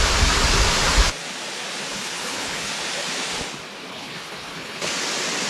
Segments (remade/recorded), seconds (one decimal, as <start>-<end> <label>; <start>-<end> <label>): 0.0-1.9 recorded; 1.9-2.7 remade; 2.7-3.9 recorded; 3.9-4.9 remade; 4.9-5.5 recorded